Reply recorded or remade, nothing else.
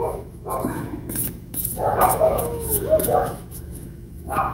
remade